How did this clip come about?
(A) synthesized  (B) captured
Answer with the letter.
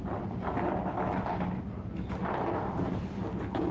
B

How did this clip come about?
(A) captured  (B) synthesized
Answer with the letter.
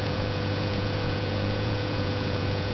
B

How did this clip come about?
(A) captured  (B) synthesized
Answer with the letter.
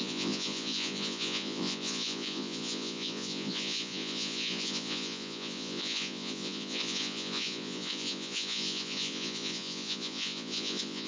B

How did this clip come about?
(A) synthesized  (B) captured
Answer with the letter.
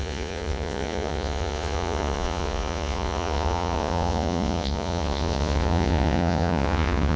A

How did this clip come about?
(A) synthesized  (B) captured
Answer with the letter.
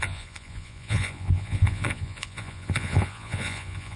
A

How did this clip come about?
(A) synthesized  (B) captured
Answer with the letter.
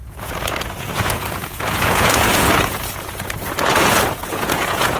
A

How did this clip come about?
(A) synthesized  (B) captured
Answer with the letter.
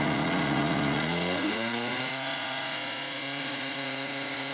A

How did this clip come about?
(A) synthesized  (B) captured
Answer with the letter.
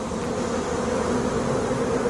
B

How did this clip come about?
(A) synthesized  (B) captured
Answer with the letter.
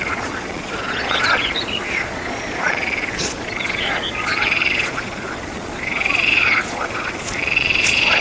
A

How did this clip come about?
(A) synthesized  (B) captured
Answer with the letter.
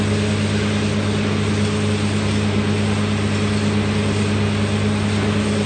B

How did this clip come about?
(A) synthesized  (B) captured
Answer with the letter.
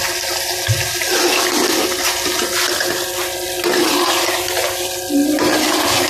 B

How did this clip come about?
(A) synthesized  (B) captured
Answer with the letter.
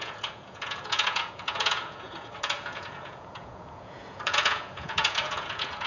A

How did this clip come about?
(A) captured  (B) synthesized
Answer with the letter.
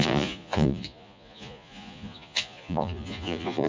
B